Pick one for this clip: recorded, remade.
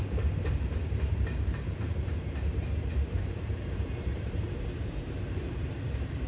remade